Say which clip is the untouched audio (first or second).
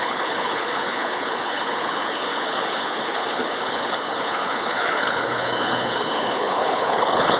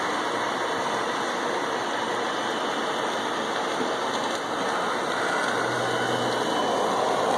second